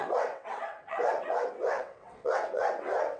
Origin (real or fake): fake